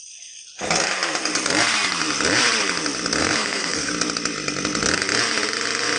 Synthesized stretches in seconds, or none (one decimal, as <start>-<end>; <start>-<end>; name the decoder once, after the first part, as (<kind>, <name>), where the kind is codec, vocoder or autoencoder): 3.2-3.9 (codec, SNAC)